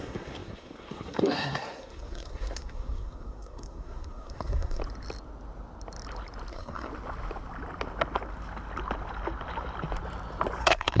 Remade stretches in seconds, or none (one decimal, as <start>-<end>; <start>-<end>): 0.0-4.8; 6.5-6.9; 10.6-11.0

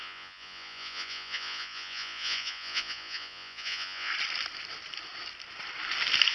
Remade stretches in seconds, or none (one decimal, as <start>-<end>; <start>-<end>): 0.0-4.1

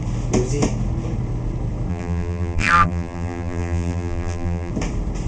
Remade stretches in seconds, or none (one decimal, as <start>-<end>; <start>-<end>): 1.9-4.7

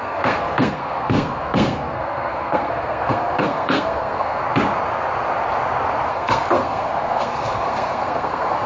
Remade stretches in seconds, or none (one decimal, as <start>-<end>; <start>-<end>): 0.0-4.4; 6.1-8.7

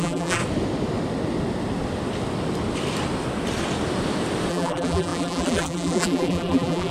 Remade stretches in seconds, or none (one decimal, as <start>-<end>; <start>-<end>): 0.0-0.4; 4.5-6.9

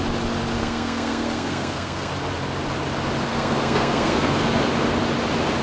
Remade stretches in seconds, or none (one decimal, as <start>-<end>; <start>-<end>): 0.6-2.1; 3.3-4.7